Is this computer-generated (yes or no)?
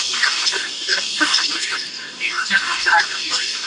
yes